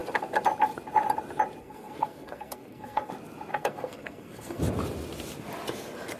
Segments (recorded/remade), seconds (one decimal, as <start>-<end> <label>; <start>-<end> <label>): 0.0-1.6 recorded; 1.6-3.1 remade; 3.1-3.5 recorded; 3.5-4.6 remade; 4.6-6.2 recorded

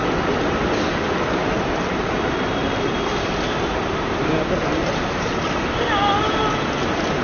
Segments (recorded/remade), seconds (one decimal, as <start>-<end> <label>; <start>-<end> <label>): 0.0-1.4 recorded; 1.4-5.6 remade; 5.6-7.2 recorded

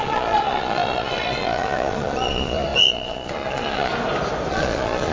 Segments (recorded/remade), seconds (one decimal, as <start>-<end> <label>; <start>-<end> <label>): 0.0-3.9 remade; 3.9-4.5 recorded; 4.5-5.1 remade

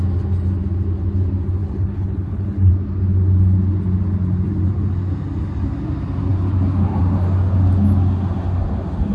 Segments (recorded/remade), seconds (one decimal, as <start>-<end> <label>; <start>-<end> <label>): 0.0-1.6 recorded; 1.6-2.7 remade; 2.7-9.1 recorded

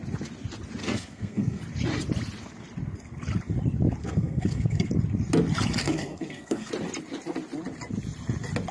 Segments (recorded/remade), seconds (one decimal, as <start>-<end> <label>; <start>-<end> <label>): 0.0-0.8 recorded; 0.8-1.6 remade; 1.6-4.0 recorded; 4.0-4.9 remade; 4.9-5.8 recorded; 5.8-6.7 remade; 6.7-8.7 recorded

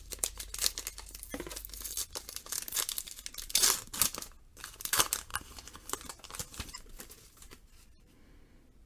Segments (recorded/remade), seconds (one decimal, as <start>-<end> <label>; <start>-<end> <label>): 0.0-6.5 recorded; 6.5-8.4 remade; 8.4-8.9 recorded

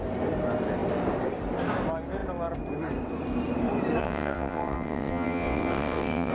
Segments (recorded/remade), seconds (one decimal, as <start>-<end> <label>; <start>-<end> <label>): 0.0-4.0 recorded; 4.0-6.3 remade